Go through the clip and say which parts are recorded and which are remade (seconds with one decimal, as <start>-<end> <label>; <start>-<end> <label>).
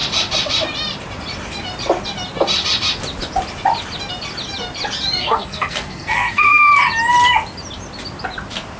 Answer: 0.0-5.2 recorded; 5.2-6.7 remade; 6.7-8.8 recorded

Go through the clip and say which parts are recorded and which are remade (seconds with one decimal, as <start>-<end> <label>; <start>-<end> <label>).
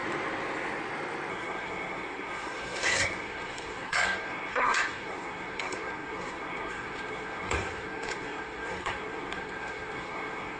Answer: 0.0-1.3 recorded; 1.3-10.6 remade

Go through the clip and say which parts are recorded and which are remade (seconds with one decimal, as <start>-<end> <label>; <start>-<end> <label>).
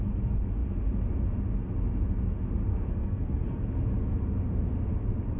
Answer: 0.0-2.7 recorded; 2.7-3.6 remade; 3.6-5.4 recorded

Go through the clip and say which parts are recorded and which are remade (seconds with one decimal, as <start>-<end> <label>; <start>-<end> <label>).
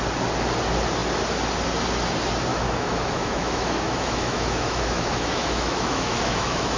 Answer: 0.0-2.5 recorded; 2.5-6.8 remade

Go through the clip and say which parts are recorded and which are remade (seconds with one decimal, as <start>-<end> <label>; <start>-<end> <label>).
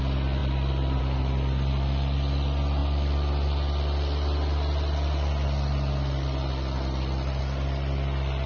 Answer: 0.0-8.5 recorded